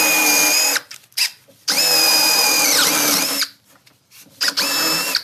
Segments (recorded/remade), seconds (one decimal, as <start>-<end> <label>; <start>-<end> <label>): 0.0-1.3 recorded; 1.3-4.4 remade; 4.4-5.2 recorded